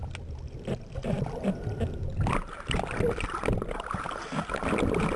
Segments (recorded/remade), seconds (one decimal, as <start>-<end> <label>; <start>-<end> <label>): 0.0-5.2 recorded